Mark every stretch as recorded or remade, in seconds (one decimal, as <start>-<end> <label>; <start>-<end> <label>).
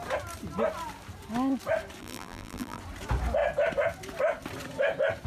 0.0-2.0 recorded; 2.0-2.8 remade; 2.8-5.3 recorded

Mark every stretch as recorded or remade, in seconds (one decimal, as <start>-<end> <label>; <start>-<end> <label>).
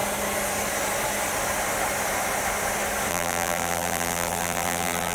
0.0-3.1 recorded; 3.1-5.1 remade